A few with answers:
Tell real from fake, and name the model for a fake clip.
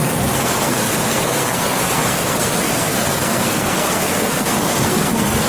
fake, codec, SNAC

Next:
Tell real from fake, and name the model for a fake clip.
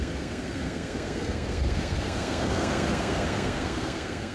fake, codec, SNAC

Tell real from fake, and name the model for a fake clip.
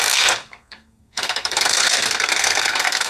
fake, codec, SNAC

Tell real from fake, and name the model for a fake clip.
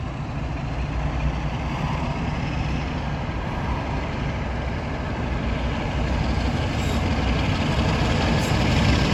real